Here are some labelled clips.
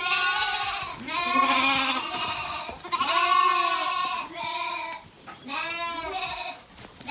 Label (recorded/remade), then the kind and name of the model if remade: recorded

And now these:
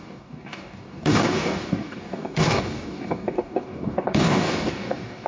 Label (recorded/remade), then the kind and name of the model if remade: remade, codec, DAC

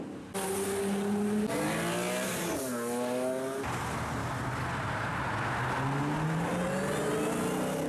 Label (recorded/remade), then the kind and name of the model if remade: recorded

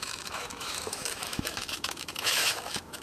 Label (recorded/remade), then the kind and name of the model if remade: remade, autoencoder, DAC-VAE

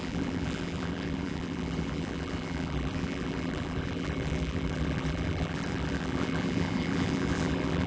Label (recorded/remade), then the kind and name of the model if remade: remade, vocoder, BigVGAN v2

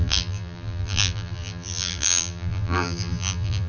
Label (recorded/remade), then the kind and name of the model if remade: remade, vocoder, BigVGAN v2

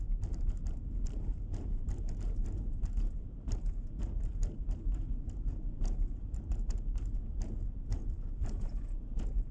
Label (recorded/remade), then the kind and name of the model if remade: remade, vocoder, BigVGAN v2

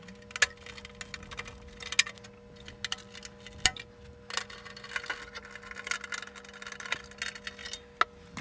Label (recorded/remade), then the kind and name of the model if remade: recorded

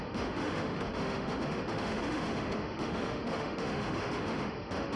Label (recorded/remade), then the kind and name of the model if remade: remade, autoencoder, DAC-VAE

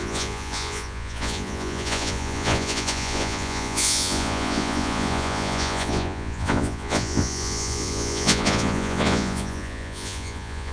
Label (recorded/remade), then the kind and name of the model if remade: remade, vocoder, Vocos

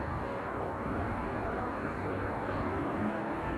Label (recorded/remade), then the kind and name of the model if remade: remade, codec, DAC